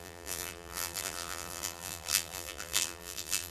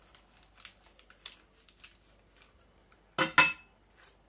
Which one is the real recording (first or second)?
second